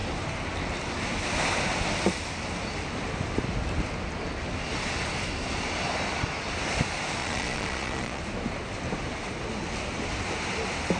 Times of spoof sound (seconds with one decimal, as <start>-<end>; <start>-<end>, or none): 7.2-8.2